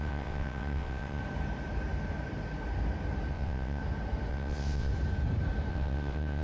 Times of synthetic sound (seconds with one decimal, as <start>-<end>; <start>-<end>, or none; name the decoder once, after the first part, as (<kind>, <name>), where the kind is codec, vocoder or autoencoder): 0.0-1.2 (vocoder, WaveNeXt); 3.3-3.8; 4.3-4.9; 5.7-6.4